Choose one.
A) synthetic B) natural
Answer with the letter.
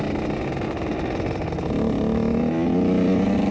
B